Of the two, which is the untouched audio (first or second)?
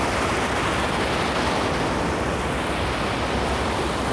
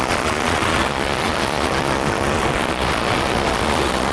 first